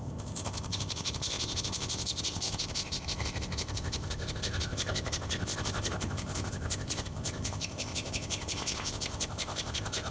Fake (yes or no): yes